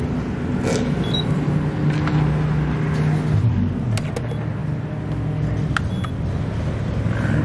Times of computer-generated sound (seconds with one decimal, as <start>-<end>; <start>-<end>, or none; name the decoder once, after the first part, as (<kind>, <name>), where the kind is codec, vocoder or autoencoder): none